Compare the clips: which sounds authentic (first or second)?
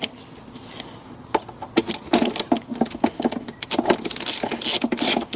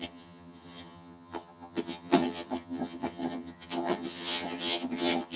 first